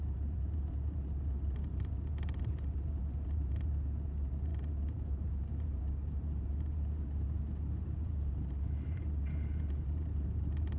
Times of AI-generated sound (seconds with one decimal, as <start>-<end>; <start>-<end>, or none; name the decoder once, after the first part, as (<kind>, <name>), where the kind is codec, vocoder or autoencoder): 0.0-10.8 (vocoder, BigVGAN v2)